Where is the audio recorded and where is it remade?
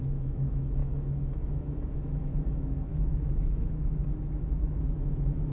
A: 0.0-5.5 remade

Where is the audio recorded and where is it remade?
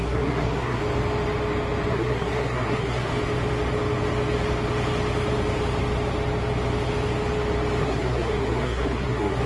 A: 0.0-0.8 remade; 0.8-1.9 recorded; 1.9-3.1 remade; 3.1-7.8 recorded; 7.8-9.5 remade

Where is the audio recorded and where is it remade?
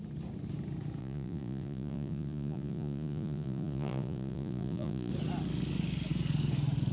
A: 0.0-1.0 recorded; 1.0-5.1 remade; 5.1-6.9 recorded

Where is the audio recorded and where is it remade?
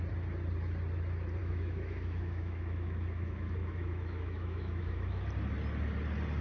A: 0.0-1.4 recorded; 1.4-5.2 remade; 5.2-6.4 recorded